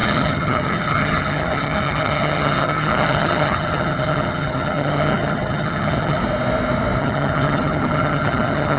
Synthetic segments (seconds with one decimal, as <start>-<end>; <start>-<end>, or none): 0.0-6.2; 7.0-8.8